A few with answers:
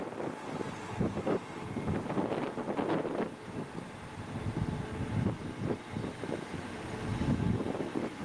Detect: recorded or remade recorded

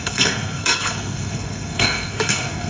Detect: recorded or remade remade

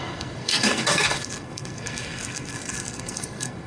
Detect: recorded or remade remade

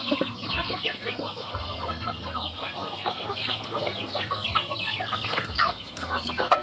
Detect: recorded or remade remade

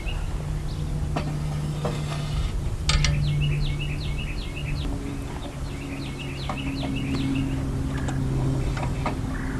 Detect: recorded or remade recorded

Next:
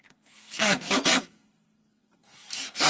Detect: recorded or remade remade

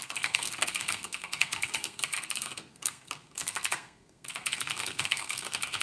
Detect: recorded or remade remade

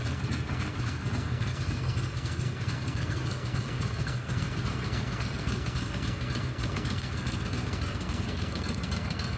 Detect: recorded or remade remade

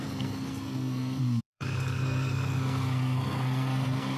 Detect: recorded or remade remade